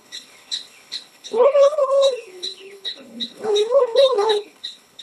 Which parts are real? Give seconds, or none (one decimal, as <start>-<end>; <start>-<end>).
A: none